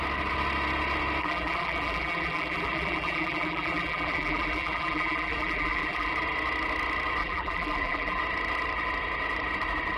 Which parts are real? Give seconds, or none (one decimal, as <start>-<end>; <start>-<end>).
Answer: 0.0-1.2; 6.1-7.2; 8.2-10.0

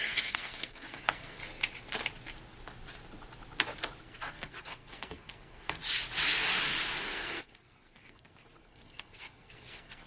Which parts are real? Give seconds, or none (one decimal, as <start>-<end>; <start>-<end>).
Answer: 1.4-4.0; 5.8-7.0